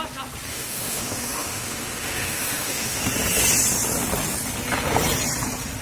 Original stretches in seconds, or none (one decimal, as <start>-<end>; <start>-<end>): 0.0-0.5; 3.0-5.8